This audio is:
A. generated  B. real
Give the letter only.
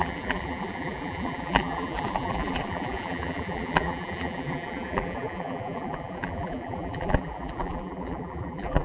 A